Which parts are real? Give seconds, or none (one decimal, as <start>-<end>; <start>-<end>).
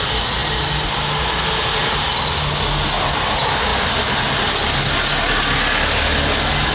0.0-6.7